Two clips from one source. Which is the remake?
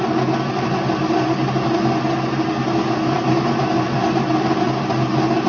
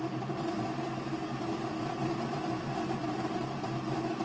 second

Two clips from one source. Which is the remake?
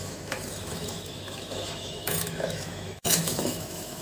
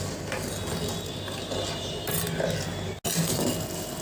first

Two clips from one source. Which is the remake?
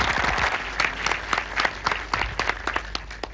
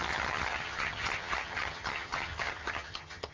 second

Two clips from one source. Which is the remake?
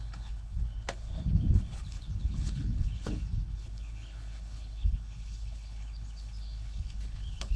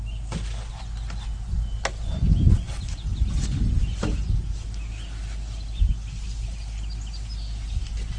first